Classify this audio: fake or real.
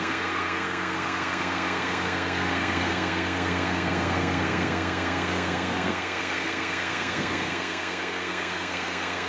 fake